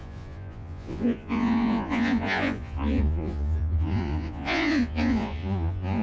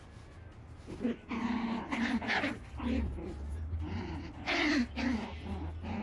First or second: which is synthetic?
first